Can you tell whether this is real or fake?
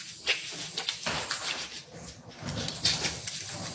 real